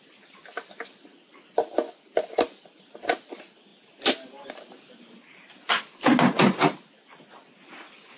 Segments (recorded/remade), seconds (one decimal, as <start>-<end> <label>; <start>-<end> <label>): 0.0-2.1 recorded; 2.1-2.7 remade; 2.7-8.2 recorded